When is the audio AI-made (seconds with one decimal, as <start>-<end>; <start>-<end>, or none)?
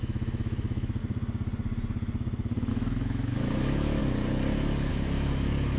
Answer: 0.0-1.0; 2.7-4.0; 4.9-5.8